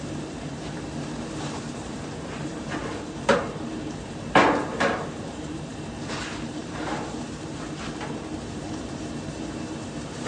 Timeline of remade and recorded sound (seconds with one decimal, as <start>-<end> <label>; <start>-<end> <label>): 0.0-10.3 remade